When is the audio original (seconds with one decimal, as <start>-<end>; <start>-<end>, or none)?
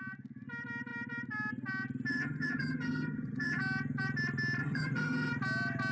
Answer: 0.0-2.1; 3.6-4.6; 5.3-5.9